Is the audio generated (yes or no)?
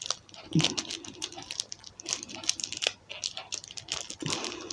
no